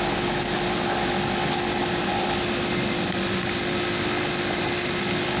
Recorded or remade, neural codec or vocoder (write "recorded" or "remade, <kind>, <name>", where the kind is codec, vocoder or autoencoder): recorded